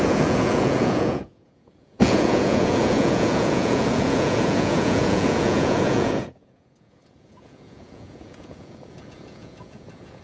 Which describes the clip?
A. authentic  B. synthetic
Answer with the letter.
B